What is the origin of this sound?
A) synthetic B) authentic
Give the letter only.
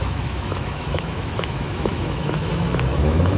A